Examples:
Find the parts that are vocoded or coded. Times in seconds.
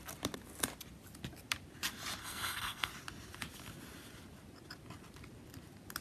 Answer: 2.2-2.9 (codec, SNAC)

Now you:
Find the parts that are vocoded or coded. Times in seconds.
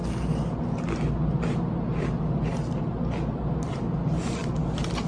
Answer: none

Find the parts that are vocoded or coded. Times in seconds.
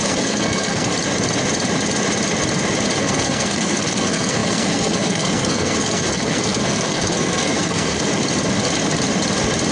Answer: 0.0-0.9 (codec, SNAC); 3.0-8.1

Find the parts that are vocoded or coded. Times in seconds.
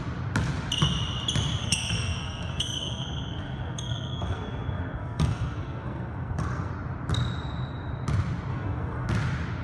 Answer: 1.6-6.7 (codec, SNAC); 8.5-9.1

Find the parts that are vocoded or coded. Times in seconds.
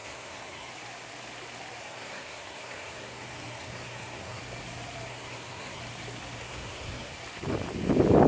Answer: 0.0-0.7 (codec, SNAC); 1.8-4.4; 5.1-5.8; 6.4-7.1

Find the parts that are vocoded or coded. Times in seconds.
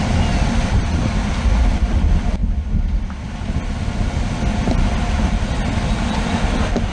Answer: none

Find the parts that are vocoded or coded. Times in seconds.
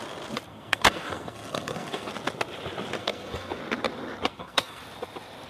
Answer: 0.5-2.1 (codec, SNAC); 3.0-3.6; 4.3-4.8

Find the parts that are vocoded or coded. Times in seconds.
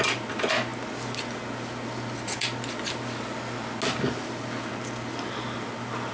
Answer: none